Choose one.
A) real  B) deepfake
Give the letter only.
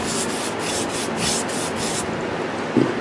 A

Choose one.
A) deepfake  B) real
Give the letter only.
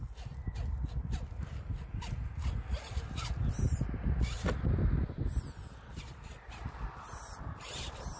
B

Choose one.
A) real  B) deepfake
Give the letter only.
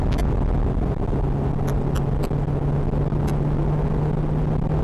A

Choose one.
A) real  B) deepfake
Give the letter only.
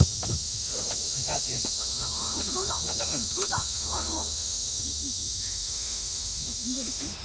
B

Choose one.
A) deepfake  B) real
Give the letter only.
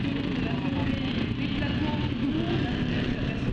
B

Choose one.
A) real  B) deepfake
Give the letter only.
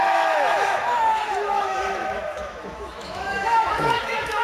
B